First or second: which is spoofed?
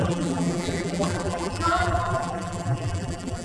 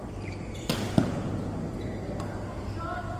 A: first